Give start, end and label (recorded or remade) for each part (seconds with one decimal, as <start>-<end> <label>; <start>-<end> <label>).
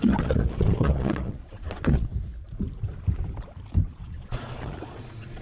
0.0-2.1 remade; 2.1-3.9 recorded; 3.9-5.4 remade